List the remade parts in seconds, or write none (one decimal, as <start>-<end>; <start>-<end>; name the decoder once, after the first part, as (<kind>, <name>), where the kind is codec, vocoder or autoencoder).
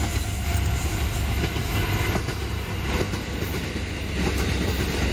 none